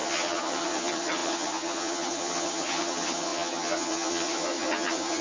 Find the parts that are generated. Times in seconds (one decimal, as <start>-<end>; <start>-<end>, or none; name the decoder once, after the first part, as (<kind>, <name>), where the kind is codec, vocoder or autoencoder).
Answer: 0.0-5.2 (vocoder, HiFi-GAN)